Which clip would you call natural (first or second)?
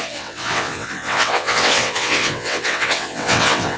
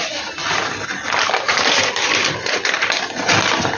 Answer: second